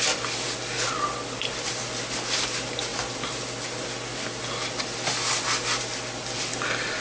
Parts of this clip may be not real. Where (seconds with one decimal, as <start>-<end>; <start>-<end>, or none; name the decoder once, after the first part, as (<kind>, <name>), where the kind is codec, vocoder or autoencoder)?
none